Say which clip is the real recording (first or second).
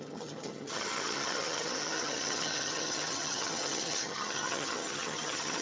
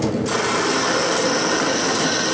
second